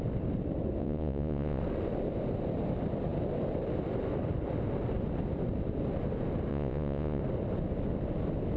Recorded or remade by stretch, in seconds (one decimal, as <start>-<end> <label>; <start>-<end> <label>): 0.0-0.8 recorded; 0.8-1.6 remade; 1.6-6.5 recorded; 6.5-7.2 remade; 7.2-8.6 recorded